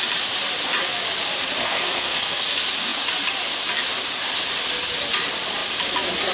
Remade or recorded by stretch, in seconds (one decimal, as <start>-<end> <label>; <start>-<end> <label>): 0.0-1.6 recorded; 1.6-2.4 remade; 2.4-6.3 recorded